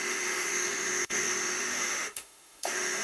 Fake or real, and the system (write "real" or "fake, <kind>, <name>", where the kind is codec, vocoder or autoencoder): fake, autoencoder, DAC-VAE